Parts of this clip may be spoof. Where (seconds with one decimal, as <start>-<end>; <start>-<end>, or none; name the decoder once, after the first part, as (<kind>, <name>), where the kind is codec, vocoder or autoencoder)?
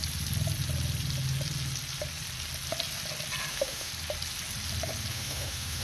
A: 3.5-3.9 (autoencoder, DAC-VAE); 5.1-5.8